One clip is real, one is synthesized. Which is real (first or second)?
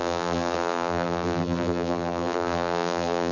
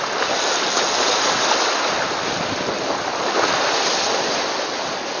second